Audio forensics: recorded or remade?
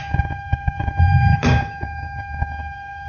remade